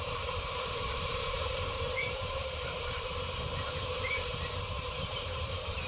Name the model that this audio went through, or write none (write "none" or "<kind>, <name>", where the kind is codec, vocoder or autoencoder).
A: vocoder, BigVGAN v2